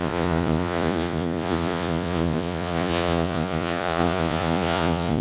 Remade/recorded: remade